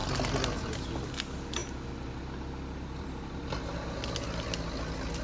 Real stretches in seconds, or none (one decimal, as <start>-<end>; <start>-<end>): 0.0-5.2